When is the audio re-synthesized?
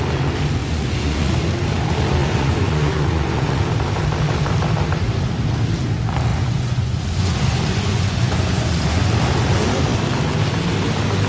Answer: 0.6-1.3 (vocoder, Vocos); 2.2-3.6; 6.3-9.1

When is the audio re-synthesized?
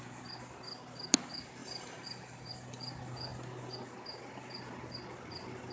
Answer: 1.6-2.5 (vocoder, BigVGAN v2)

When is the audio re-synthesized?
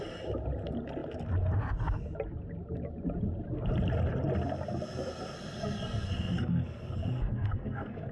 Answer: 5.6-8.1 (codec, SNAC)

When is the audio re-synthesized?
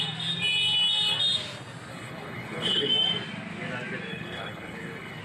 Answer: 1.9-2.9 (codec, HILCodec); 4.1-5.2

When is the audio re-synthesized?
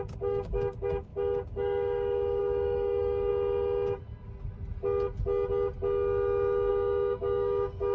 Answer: 0.0-3.3 (codec, DAC); 6.7-7.9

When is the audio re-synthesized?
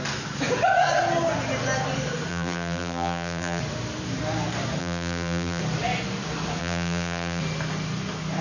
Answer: 2.3-3.6 (vocoder, BigVGAN v2); 4.8-5.6; 6.6-7.4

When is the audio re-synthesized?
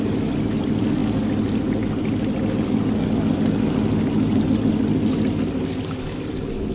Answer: none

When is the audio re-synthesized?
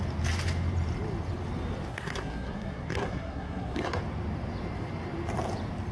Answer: 1.9-4.0 (codec, SNAC)